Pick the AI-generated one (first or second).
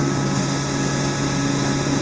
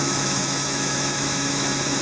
second